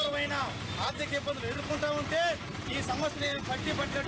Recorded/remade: recorded